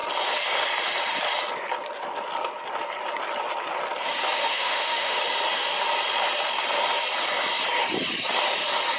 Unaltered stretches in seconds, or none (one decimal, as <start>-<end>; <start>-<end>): 0.0-4.4; 5.2-9.0